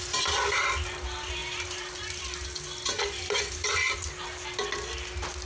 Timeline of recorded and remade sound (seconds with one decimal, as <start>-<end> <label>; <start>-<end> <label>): 0.0-5.5 recorded